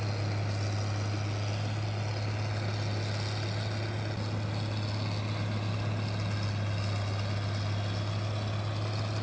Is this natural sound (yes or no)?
yes